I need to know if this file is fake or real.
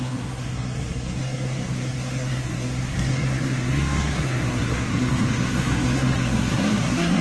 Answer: fake